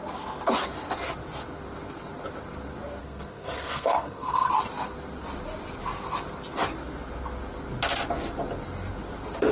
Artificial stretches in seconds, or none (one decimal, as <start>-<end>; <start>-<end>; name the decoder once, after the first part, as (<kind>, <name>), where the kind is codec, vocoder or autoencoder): 3.0-4.5 (codec, SNAC)